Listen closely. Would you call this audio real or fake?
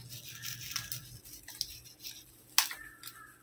real